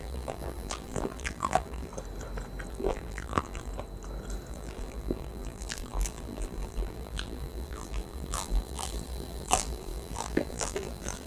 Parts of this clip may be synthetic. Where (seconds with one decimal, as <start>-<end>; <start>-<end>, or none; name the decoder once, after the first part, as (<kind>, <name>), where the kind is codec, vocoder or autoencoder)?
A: 0.0-1.9 (vocoder, BigVGAN v2); 2.7-3.7; 4.5-11.3